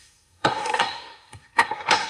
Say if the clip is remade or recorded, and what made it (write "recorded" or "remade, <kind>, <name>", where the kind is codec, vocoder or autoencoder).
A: remade, codec, SNAC